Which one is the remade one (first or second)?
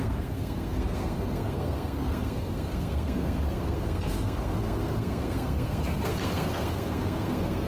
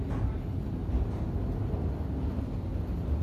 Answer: first